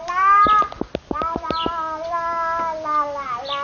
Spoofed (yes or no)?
no